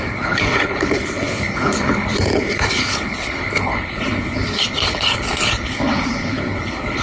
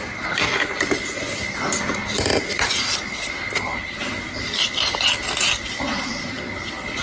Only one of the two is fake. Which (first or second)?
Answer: first